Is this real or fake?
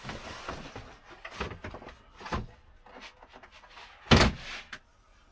real